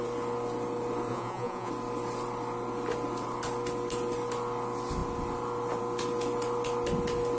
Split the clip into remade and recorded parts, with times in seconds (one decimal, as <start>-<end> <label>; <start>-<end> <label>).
0.0-1.1 recorded; 1.1-1.7 remade; 1.7-7.4 recorded